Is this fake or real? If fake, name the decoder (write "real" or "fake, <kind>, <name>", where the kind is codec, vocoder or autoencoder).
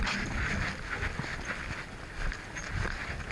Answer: real